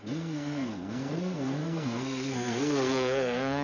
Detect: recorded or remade remade